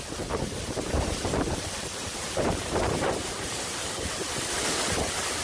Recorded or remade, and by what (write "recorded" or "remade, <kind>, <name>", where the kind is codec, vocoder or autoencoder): remade, vocoder, BigVGAN v2